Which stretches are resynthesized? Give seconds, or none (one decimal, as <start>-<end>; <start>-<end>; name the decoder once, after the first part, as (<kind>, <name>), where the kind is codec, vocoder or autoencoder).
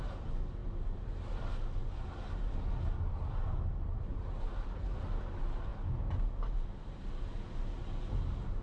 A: none